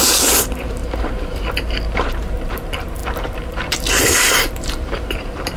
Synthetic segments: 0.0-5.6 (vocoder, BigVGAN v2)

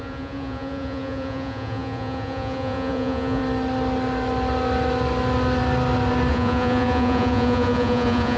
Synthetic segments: 0.0-3.4 (vocoder, Vocos); 6.3-8.4

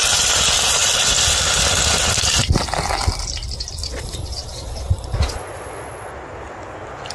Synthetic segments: 3.8-6.1 (vocoder, Vocos)

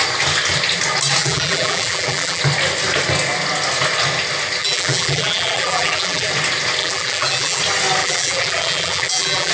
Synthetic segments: 1.2-2.4 (vocoder, BigVGAN v2); 4.6-6.3; 6.8-7.6; 8.0-9.5

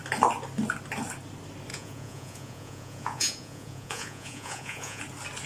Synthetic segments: 1.7-5.0 (vocoder, Vocos)

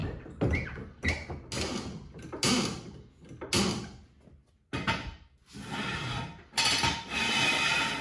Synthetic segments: none

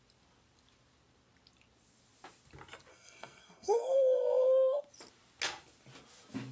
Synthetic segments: 2.9-4.8 (codec, SNAC)

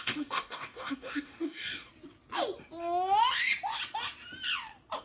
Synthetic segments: 0.0-1.9 (codec, DAC)